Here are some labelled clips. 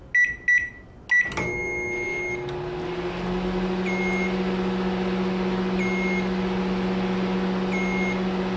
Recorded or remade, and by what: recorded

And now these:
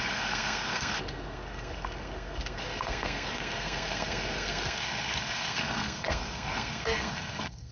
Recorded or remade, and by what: remade, codec, SNAC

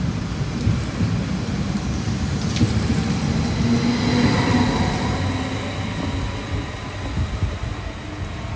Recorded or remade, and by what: recorded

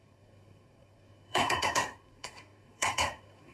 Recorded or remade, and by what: remade, codec, SNAC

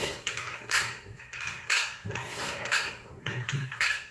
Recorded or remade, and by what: remade, codec, SNAC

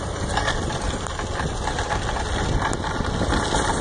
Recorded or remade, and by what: recorded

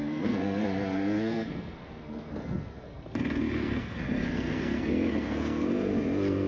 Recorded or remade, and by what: remade, codec, SNAC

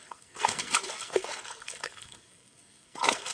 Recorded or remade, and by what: remade, codec, SNAC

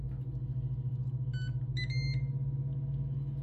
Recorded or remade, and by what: recorded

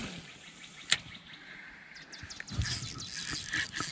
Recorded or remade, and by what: recorded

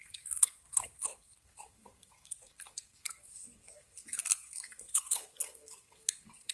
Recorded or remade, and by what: remade, codec, SNAC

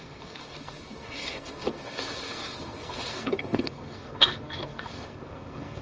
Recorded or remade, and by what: remade, codec, SNAC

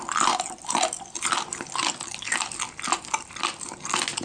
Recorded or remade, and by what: recorded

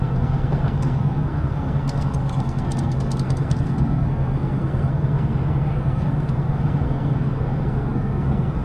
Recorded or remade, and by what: remade, codec, SNAC